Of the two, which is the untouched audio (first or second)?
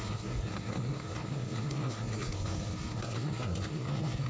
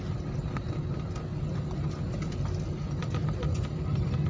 second